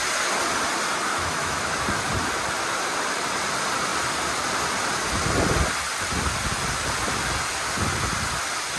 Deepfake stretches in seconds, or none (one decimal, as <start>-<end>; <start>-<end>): 1.1-1.6